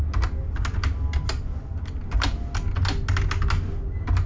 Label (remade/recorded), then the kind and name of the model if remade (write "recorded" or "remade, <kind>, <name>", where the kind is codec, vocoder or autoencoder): recorded